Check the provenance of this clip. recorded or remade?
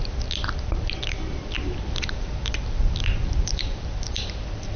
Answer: remade